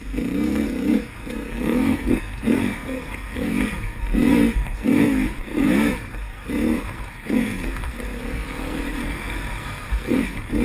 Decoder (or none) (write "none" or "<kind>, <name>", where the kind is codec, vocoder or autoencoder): codec, SNAC